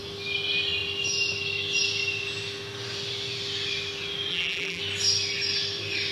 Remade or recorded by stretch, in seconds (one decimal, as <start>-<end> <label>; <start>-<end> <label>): 0.0-4.3 recorded; 4.3-4.8 remade; 4.8-6.1 recorded